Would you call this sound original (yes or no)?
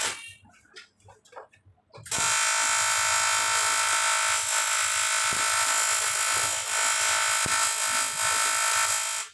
yes